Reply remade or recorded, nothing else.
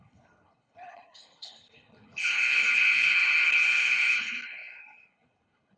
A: remade